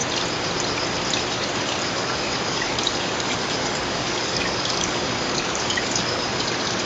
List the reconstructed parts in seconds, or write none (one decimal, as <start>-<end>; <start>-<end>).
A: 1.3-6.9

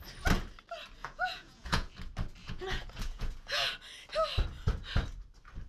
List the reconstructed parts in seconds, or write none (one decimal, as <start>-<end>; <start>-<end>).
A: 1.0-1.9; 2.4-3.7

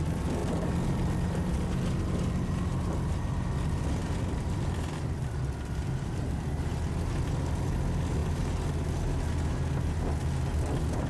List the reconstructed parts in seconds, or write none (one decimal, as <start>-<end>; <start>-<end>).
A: 0.4-1.5; 4.0-7.1

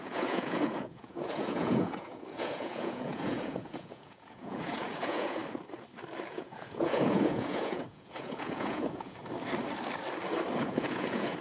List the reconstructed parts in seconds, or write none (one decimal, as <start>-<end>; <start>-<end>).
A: 0.0-5.4; 6.3-9.2; 10.6-11.4

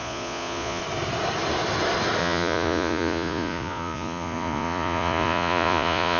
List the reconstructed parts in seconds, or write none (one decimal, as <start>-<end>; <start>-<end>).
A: 0.0-0.8; 2.2-6.2

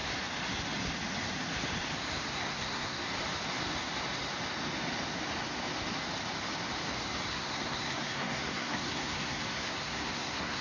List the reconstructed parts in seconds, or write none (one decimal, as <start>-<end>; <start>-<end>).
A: 2.3-3.0; 7.3-10.6

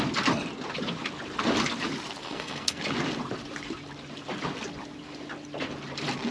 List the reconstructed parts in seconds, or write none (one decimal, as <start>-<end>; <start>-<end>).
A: 2.2-2.8

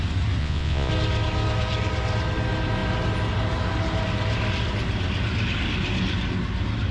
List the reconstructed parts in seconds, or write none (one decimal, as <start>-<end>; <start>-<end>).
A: 0.4-0.9